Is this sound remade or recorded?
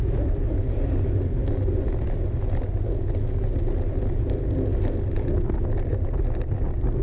recorded